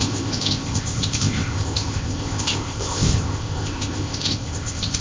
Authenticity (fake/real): fake